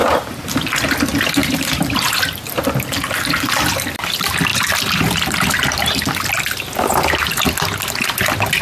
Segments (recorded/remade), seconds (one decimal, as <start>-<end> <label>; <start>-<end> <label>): 0.0-0.7 remade; 0.7-1.4 recorded; 1.4-2.1 remade; 2.1-8.6 recorded